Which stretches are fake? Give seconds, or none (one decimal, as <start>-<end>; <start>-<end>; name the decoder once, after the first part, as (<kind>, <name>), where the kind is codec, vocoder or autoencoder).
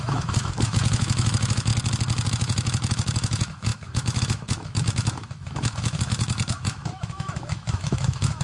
0.0-1.7 (autoencoder, DAC-VAE); 2.3-8.4